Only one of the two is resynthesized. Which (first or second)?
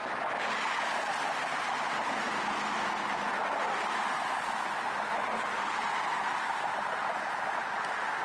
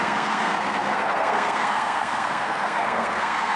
second